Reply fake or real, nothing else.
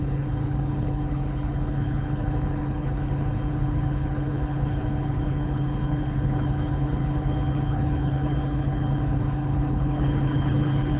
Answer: fake